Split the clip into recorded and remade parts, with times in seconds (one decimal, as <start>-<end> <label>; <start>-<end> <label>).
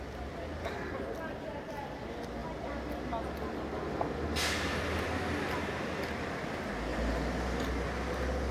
0.0-8.5 recorded